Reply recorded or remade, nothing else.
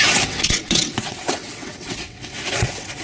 remade